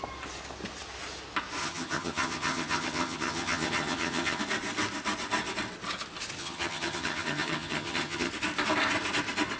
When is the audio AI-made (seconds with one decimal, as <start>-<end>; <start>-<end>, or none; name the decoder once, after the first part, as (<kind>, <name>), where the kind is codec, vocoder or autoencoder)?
1.6-4.4 (vocoder, HiFi-GAN); 6.4-8.3